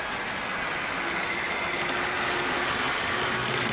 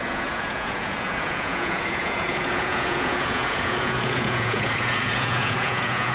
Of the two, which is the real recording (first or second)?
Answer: first